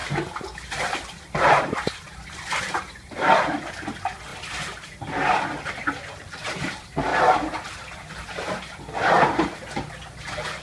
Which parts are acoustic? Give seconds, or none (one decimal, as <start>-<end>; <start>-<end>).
0.0-7.1; 7.7-10.6